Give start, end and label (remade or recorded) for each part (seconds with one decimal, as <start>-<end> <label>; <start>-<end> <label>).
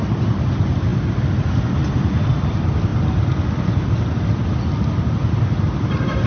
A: 0.0-6.3 recorded